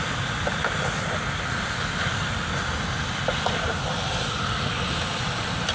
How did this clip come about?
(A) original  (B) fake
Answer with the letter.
B